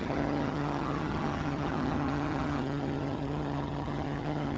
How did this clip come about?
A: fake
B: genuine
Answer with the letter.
A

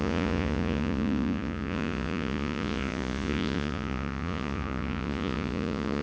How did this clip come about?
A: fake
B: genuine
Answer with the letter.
A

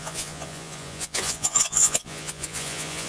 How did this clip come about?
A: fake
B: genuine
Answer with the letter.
A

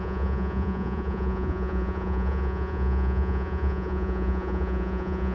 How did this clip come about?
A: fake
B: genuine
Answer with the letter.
A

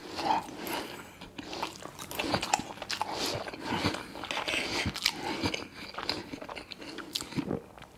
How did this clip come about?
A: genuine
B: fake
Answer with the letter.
A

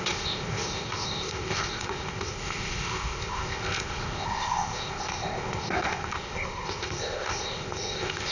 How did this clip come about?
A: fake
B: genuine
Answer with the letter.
A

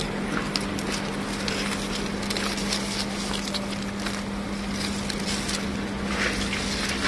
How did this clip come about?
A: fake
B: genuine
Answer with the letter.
B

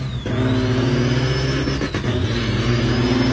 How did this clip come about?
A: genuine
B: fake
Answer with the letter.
A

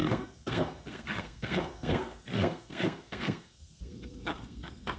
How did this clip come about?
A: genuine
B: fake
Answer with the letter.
B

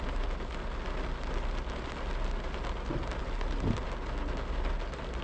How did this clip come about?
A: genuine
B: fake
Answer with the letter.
A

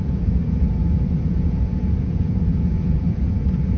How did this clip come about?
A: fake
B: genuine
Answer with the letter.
A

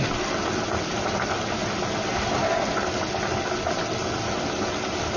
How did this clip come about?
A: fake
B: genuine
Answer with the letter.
B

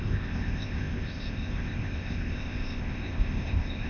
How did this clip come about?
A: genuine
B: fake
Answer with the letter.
B